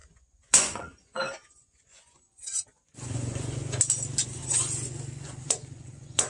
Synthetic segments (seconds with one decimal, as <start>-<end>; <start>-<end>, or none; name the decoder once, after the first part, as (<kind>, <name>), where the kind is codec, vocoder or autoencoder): 0.0-3.8 (vocoder, Vocos); 4.2-6.3